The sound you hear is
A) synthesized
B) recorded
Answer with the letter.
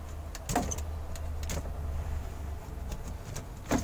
B